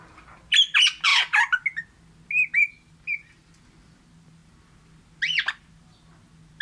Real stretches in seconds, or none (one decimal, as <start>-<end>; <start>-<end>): 0.0-6.6